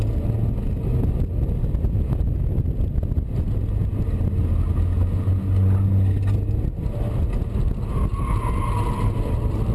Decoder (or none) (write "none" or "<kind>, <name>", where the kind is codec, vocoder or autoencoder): none